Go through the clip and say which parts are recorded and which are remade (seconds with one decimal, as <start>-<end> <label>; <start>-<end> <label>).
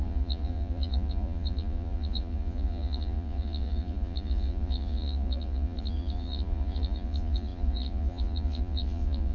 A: 0.0-9.3 remade